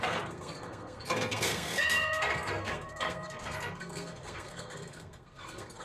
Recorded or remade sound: remade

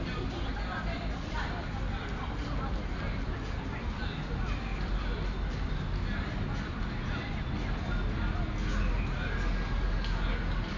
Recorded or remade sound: recorded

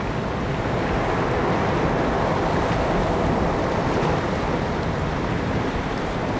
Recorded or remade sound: recorded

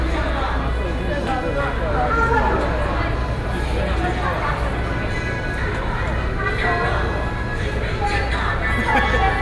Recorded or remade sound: recorded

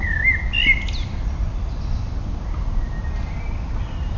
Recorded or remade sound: recorded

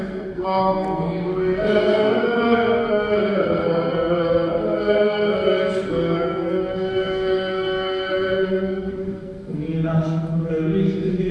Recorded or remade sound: remade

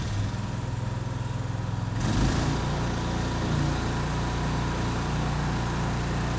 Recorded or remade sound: recorded